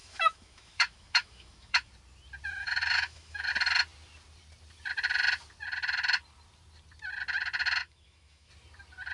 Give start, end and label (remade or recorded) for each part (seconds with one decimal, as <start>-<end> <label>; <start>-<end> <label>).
0.0-1.9 remade; 1.9-2.6 recorded; 2.6-3.5 remade; 3.5-7.8 recorded; 7.8-8.5 remade; 8.5-9.1 recorded